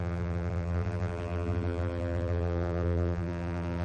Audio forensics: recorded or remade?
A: remade